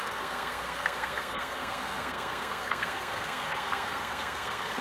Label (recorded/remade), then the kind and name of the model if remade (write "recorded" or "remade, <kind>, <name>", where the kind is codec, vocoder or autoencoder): remade, codec, SNAC